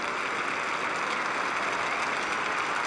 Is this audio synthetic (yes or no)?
no